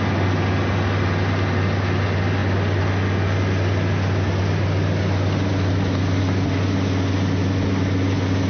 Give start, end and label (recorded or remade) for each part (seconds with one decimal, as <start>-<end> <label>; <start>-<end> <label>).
0.0-8.5 recorded